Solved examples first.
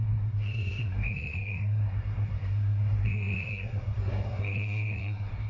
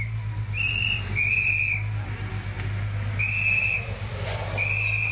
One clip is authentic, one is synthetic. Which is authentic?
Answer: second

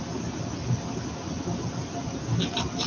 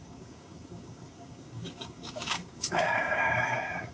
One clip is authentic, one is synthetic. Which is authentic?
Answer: first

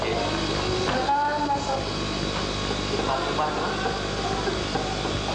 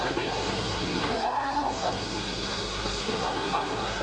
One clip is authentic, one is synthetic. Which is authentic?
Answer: first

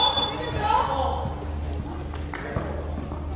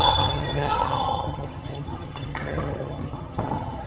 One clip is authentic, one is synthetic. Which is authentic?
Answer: first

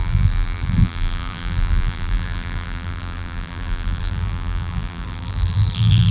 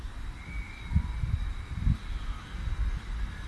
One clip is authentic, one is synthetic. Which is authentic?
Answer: second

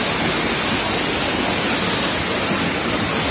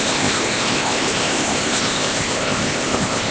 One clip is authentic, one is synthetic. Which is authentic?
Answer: first